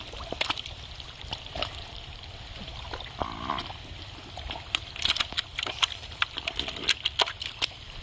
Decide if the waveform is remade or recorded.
recorded